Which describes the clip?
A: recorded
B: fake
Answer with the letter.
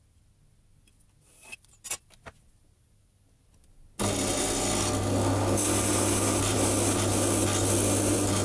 A